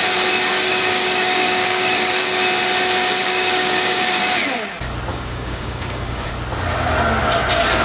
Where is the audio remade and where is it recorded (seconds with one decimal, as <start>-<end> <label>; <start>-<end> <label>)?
0.0-0.7 recorded; 0.7-2.1 remade; 2.1-3.2 recorded; 3.2-4.2 remade; 4.2-5.1 recorded; 5.1-6.3 remade; 6.3-7.8 recorded